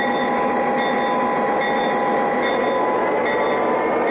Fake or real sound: real